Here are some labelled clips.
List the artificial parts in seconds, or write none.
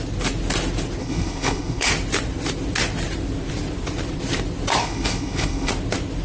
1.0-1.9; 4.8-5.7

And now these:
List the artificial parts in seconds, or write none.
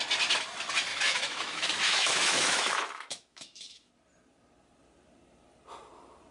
0.9-3.9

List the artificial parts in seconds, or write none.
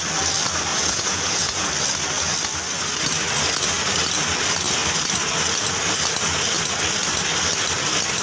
0.7-1.7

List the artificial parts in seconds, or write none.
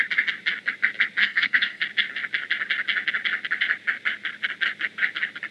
1.2-1.8